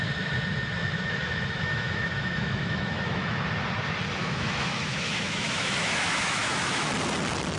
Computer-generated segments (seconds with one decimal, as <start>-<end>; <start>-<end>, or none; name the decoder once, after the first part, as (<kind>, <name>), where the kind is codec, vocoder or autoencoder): 0.8-3.4 (autoencoder, DAC-VAE); 4.2-6.9